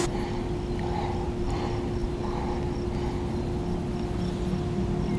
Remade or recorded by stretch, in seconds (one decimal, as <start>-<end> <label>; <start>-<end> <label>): 0.0-5.2 recorded